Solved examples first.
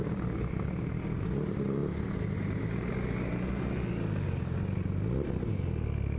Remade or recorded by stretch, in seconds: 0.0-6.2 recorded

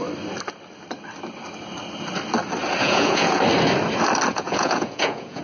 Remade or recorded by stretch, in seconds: 0.0-2.8 recorded; 2.8-3.4 remade; 3.4-4.3 recorded; 4.3-5.4 remade

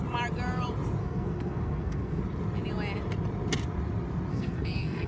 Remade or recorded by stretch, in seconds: 0.0-1.0 recorded; 1.0-2.2 remade; 2.2-4.3 recorded; 4.3-5.1 remade

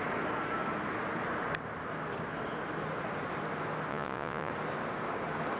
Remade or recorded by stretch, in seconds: 0.0-3.9 recorded; 3.9-4.5 remade; 4.5-5.6 recorded